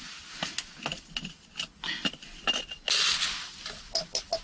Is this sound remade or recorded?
recorded